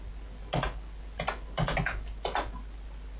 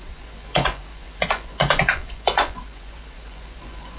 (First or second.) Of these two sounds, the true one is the first